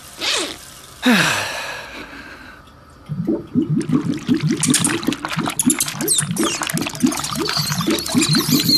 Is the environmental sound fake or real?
real